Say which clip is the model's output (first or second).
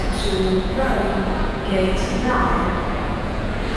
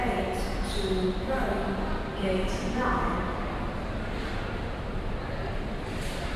first